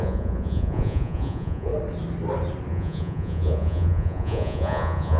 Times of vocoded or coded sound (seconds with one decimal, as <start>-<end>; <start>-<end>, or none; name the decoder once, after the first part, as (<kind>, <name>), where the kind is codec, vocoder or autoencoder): 0.0-1.7 (vocoder, Vocos); 2.7-5.2